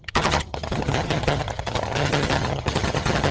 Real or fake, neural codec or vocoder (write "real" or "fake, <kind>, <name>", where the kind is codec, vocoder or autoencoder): fake, vocoder, HiFi-GAN